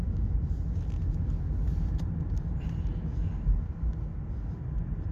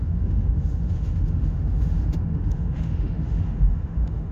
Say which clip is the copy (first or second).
second